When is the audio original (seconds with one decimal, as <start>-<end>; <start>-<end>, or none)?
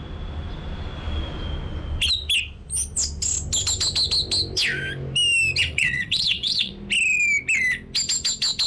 0.0-5.6; 6.7-8.7